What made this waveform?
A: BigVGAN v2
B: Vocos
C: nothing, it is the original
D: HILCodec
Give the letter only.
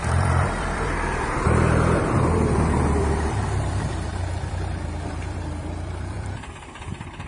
A